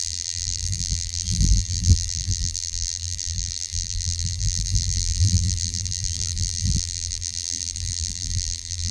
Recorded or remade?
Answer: remade